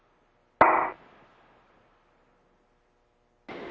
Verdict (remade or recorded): recorded